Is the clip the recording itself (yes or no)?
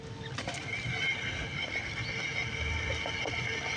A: yes